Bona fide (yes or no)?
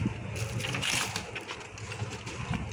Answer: yes